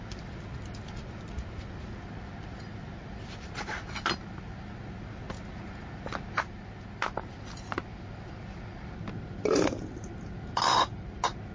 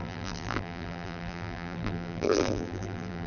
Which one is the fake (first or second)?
second